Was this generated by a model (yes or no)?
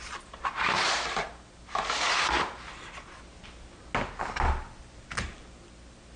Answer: no